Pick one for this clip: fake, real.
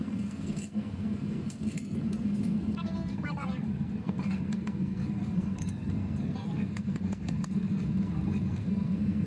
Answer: fake